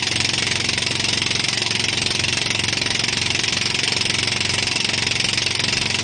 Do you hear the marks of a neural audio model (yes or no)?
no